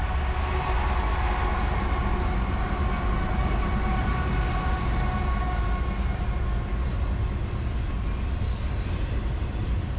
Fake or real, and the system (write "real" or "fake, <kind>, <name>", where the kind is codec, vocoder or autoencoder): real